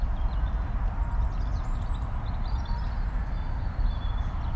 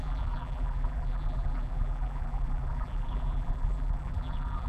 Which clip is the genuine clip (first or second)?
first